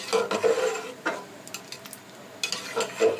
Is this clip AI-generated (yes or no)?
no